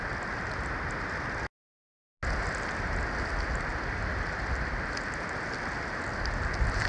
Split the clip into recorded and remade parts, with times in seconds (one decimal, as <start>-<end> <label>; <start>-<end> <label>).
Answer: 0.0-6.9 recorded